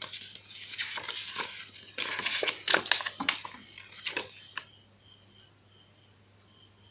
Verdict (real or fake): real